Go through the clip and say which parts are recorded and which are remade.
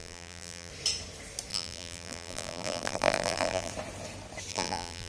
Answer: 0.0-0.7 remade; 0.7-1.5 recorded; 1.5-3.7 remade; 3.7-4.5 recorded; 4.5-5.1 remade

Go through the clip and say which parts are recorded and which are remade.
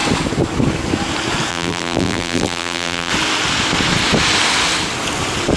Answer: 0.0-1.5 recorded; 1.5-3.1 remade; 3.1-5.6 recorded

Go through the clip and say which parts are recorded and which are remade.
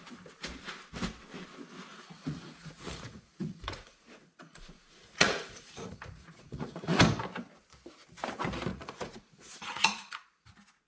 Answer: 0.0-1.9 recorded; 1.9-7.0 remade; 7.0-8.7 recorded; 8.7-10.5 remade; 10.5-10.9 recorded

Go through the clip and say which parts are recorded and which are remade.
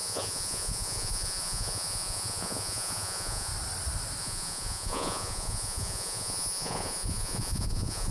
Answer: 0.0-3.5 remade; 3.5-4.2 recorded; 4.2-8.1 remade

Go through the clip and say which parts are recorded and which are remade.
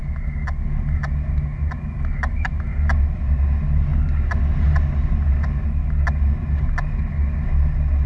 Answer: 0.0-8.1 recorded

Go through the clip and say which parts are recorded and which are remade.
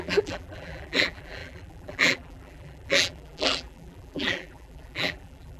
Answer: 0.0-5.6 remade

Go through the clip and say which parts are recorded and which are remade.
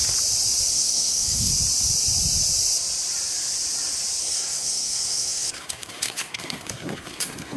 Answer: 0.0-0.7 recorded; 0.7-1.5 remade; 1.5-4.2 recorded; 4.2-7.6 remade